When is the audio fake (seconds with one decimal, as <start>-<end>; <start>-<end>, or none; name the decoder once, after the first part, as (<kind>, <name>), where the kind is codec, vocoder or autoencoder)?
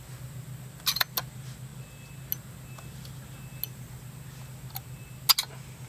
none